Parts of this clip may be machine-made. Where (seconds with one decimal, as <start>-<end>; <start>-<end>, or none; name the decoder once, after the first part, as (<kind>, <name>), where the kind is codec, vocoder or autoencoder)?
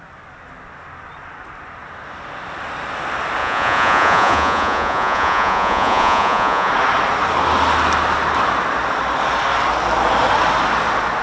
3.4-6.7 (vocoder, Vocos)